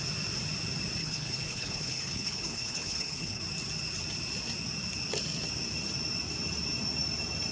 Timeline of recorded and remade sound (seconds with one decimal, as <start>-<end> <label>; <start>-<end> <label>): 0.0-1.0 recorded; 1.0-3.4 remade; 3.4-7.5 recorded